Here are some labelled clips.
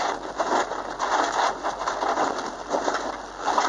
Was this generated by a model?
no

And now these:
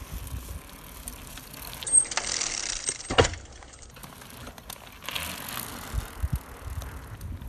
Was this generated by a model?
no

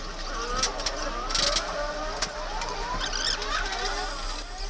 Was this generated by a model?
no